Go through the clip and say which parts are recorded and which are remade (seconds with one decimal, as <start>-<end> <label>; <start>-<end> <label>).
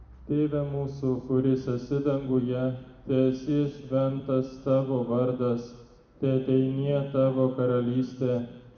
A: 0.0-3.5 recorded; 3.5-4.6 remade; 4.6-8.8 recorded